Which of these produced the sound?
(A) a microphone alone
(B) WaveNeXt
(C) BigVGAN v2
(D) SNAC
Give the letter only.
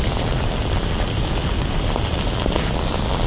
A